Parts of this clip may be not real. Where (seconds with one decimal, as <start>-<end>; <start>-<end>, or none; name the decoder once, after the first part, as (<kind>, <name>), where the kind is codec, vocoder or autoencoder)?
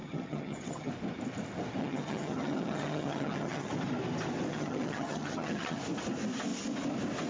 0.0-0.9 (vocoder, HiFi-GAN); 1.8-3.7; 4.5-5.8